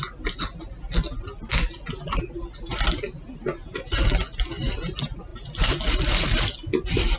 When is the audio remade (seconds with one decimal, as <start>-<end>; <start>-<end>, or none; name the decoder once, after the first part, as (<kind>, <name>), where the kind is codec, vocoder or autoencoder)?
none